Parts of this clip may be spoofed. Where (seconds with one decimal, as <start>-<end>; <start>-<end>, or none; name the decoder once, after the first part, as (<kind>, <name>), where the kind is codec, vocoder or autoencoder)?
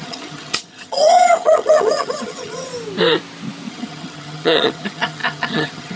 0.0-2.7 (vocoder, HiFi-GAN); 3.7-6.0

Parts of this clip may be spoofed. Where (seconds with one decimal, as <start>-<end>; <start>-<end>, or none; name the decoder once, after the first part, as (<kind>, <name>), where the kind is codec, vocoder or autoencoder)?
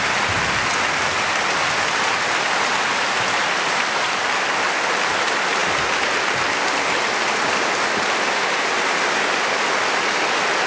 none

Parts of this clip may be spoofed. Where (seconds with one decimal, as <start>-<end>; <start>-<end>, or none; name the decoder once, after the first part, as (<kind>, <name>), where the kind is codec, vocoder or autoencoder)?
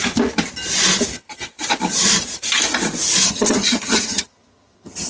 3.2-5.1 (vocoder, HiFi-GAN)